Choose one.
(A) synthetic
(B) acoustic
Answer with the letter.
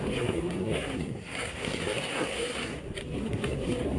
A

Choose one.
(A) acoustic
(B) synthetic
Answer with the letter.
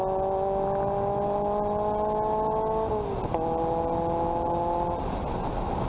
A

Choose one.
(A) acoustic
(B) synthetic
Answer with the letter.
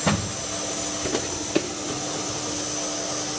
A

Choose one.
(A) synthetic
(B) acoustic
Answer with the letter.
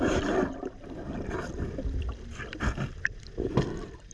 B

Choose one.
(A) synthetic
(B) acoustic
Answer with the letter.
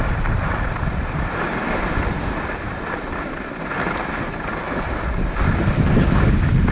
B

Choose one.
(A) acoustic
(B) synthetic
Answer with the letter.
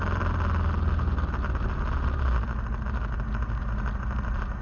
A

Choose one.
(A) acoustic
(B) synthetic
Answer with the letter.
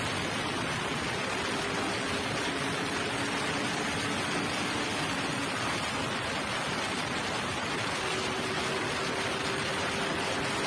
A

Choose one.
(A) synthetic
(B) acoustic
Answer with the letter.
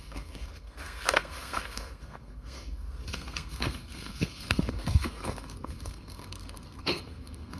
A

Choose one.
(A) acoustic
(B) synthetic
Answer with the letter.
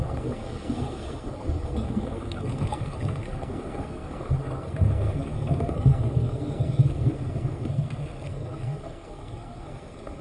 B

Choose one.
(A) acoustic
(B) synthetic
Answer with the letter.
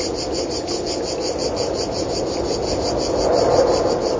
A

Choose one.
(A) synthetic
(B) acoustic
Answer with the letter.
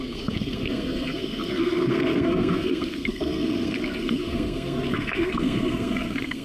A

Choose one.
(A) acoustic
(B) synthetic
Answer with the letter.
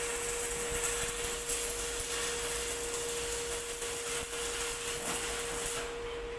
A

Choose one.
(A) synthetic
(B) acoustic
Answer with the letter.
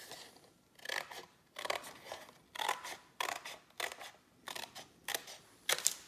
B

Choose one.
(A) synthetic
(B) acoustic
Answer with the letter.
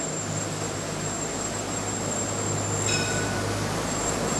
B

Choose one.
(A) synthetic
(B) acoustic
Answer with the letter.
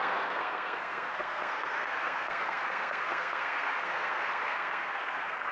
A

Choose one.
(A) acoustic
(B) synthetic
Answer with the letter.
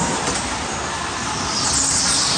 A